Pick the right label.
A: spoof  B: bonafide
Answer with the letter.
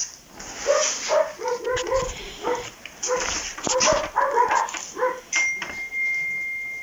B